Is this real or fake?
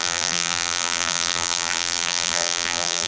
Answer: fake